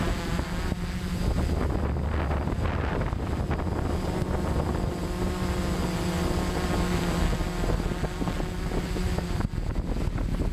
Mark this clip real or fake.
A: real